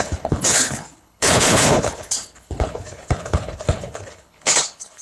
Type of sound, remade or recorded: remade